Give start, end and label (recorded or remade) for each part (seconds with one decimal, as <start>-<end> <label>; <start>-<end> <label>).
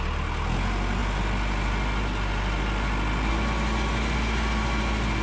0.0-5.2 recorded